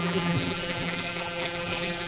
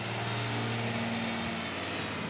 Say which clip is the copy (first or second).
first